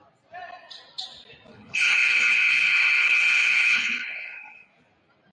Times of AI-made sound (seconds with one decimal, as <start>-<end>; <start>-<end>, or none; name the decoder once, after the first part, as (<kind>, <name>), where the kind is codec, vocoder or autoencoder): 1.5-4.7 (codec, HILCodec)